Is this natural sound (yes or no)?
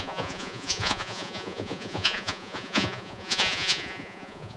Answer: no